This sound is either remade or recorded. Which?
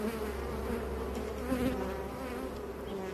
recorded